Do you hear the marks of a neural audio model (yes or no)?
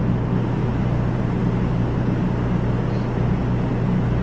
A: no